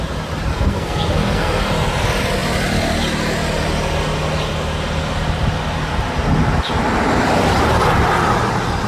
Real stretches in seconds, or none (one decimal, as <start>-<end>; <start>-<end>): 0.0-0.5; 1.6-8.9